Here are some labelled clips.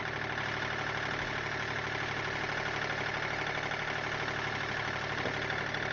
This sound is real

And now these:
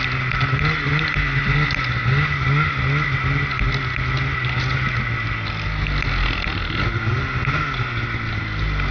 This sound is real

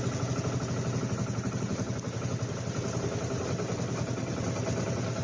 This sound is real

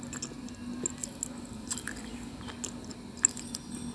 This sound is real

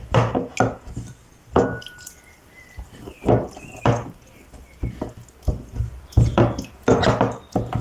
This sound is real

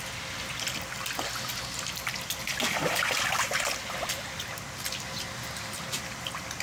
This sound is real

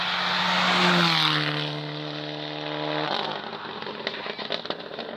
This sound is real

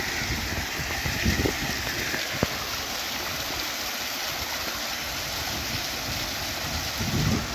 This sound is real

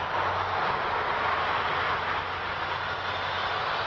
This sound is real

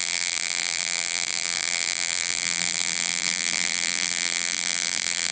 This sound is fake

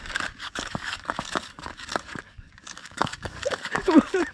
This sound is fake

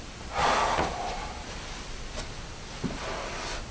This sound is real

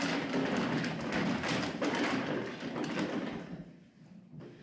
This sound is real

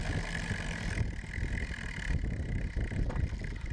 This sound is real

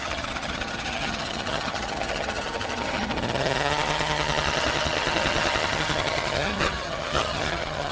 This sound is fake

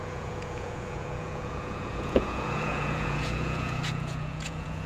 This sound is fake